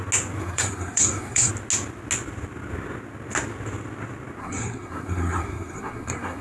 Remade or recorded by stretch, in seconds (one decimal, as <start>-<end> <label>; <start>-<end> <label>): 0.0-0.4 recorded; 0.4-1.5 remade; 1.5-4.4 recorded; 4.4-6.4 remade